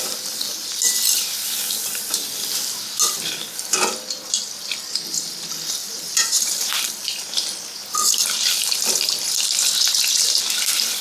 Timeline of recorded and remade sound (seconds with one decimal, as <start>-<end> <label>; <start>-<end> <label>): 0.0-5.8 recorded; 5.8-6.7 remade; 6.7-7.8 recorded; 7.8-8.5 remade; 8.5-11.0 recorded